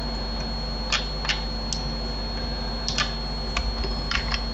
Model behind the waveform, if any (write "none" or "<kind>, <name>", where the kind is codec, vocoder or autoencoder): none